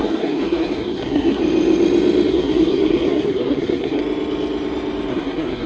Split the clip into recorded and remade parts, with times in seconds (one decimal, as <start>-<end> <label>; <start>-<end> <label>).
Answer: 0.0-1.4 remade; 1.4-2.3 recorded; 2.3-4.0 remade; 4.0-5.1 recorded; 5.1-5.7 remade